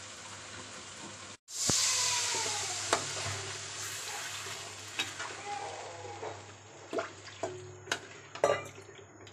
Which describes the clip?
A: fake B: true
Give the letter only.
B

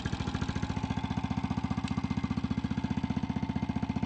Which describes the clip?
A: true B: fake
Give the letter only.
A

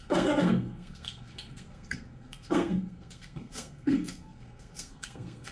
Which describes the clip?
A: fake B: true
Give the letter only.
A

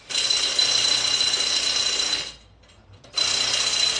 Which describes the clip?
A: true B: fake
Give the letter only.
A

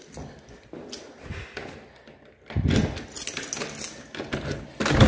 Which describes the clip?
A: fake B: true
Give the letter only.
B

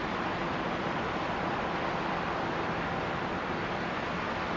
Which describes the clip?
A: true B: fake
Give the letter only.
A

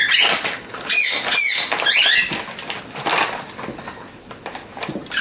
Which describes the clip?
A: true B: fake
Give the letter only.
A